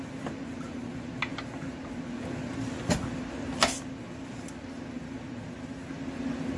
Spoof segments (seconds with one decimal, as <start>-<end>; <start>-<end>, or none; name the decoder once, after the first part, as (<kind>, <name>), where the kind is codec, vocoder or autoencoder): none